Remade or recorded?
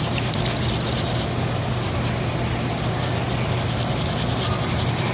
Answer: recorded